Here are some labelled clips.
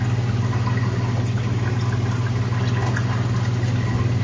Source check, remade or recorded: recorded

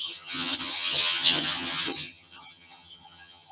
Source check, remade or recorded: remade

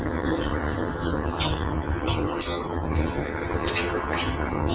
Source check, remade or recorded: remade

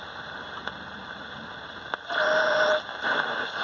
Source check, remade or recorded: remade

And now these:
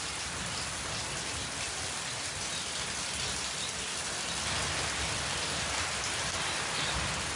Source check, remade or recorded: recorded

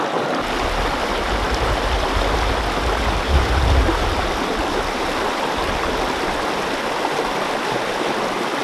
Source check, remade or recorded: recorded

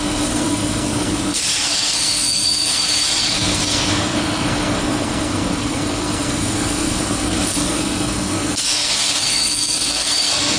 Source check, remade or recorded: remade